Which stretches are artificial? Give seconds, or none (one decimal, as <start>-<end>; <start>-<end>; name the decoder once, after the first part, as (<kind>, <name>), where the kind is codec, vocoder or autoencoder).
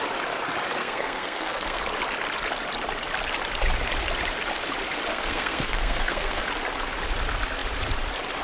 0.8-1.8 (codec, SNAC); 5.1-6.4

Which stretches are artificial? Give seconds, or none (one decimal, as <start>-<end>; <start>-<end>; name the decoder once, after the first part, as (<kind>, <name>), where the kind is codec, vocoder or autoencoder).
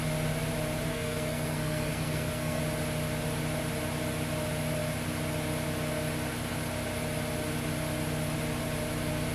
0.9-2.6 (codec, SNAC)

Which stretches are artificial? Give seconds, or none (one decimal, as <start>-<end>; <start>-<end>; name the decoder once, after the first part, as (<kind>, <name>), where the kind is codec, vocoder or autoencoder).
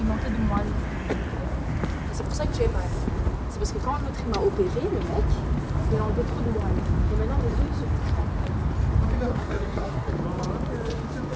9.3-10.1 (codec, SNAC)